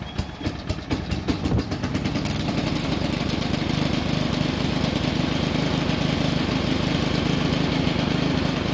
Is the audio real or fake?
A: real